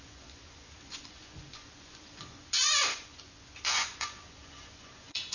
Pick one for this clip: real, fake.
fake